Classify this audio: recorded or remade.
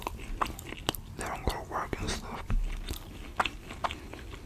recorded